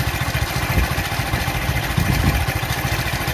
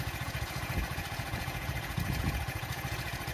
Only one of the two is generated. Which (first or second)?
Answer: second